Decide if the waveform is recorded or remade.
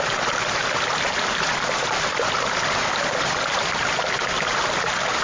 recorded